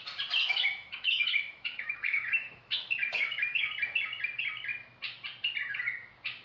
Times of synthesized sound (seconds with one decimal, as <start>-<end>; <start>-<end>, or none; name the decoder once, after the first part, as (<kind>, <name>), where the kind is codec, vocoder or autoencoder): 0.4-3.7 (autoencoder, DAC-VAE)